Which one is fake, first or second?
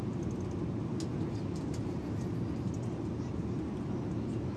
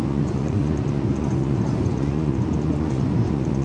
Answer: second